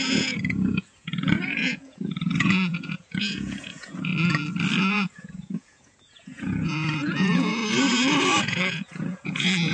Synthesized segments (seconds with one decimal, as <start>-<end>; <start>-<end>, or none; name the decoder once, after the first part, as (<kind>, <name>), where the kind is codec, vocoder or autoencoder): 0.0-4.1 (vocoder, Vocos); 4.9-7.6; 8.4-9.7

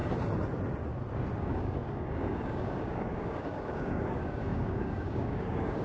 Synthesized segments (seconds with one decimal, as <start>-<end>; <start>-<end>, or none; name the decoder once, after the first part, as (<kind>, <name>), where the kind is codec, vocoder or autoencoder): 1.4-5.8 (codec, DAC)

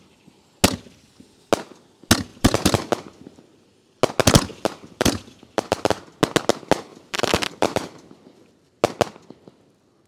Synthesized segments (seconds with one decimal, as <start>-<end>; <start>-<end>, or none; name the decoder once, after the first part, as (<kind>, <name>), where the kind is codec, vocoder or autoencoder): 2.3-3.4 (vocoder, BigVGAN v2); 4.5-6.2; 6.9-8.6

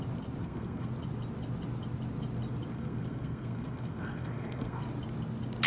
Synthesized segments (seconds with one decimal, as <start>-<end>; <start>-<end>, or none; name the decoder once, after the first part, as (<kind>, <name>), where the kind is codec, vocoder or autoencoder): 0.4-0.9 (codec, SNAC); 2.7-4.8

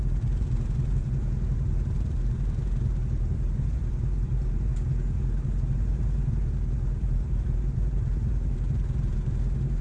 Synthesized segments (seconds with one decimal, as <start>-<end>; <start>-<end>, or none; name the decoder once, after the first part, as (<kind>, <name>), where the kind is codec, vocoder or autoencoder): 0.0-4.7 (vocoder, BigVGAN v2); 5.7-6.4; 7.0-9.8

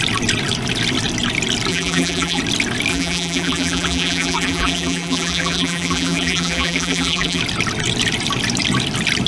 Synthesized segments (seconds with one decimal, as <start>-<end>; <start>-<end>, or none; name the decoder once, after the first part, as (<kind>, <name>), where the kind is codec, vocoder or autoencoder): 1.7-2.4 (vocoder, BigVGAN v2); 2.9-7.4

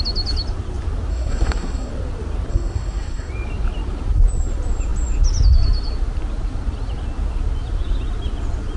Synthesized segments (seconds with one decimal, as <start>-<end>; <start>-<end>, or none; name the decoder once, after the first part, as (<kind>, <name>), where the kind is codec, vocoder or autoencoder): 1.1-1.9 (codec, SNAC); 2.5-3.3